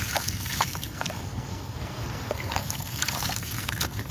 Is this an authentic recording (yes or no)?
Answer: no